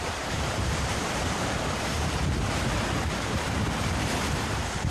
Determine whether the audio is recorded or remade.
remade